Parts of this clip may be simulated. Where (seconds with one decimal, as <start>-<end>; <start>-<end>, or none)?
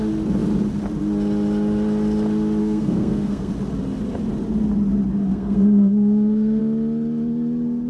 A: 2.6-3.5; 5.3-6.6